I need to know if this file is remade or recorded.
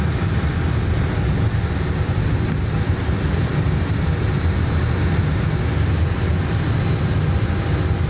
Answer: recorded